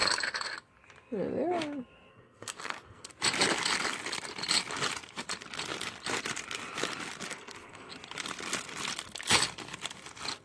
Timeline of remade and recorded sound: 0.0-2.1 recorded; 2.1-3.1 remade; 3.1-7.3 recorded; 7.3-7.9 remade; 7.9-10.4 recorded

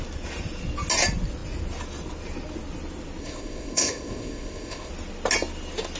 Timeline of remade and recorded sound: 0.0-3.2 recorded; 3.2-4.9 remade; 4.9-6.0 recorded

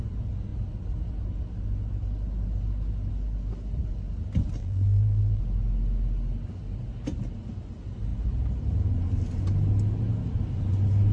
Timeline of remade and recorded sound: 0.0-4.6 recorded; 4.6-5.4 remade; 5.4-11.1 recorded

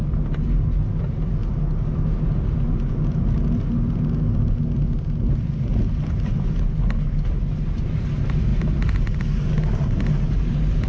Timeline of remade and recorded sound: 0.0-10.9 recorded

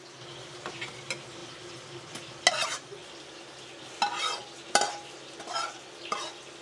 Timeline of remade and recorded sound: 0.0-1.4 recorded; 1.4-2.2 remade; 2.2-4.4 recorded; 4.4-6.1 remade; 6.1-6.6 recorded

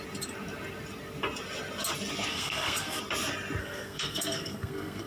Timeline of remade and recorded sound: 0.0-2.3 recorded; 2.3-3.0 remade; 3.0-3.6 recorded; 3.6-5.1 remade